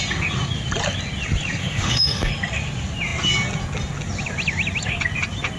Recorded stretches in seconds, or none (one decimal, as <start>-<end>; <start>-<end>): 0.0-1.6; 2.3-5.6